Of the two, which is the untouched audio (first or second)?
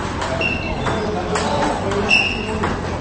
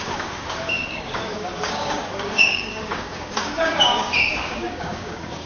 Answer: first